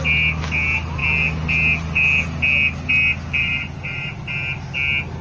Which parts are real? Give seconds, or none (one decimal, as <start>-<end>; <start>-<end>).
0.0-3.4; 4.2-5.2